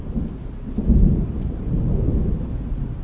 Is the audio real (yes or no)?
yes